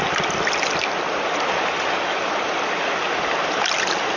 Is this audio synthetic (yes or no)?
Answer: no